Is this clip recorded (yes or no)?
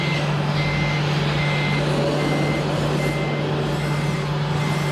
yes